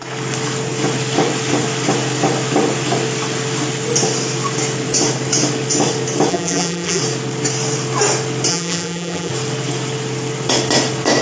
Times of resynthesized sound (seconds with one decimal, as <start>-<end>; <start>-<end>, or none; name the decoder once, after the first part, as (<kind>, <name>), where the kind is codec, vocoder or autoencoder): 6.3-7.0 (vocoder, BigVGAN v2); 8.5-9.3